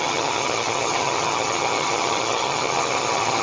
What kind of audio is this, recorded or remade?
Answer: remade